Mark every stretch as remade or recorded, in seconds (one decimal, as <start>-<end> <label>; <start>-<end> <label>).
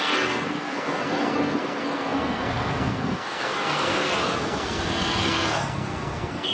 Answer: 0.0-6.5 remade